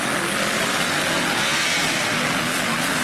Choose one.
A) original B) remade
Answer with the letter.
A